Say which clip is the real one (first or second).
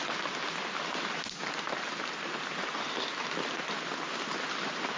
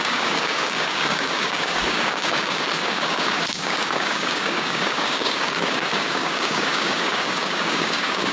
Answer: first